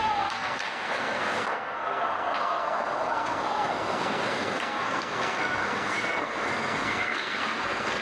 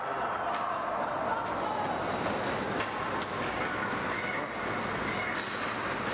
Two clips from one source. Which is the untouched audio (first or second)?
second